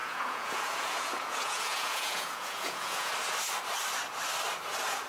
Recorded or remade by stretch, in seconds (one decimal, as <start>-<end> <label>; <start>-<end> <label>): 0.0-3.1 remade; 3.1-5.1 recorded